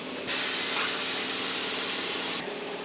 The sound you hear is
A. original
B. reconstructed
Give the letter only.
A